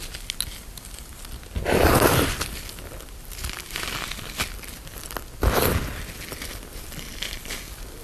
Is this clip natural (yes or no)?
no